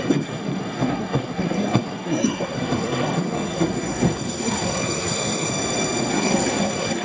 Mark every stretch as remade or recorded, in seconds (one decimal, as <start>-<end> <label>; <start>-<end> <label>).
0.0-5.5 remade; 5.5-6.1 recorded; 6.1-7.0 remade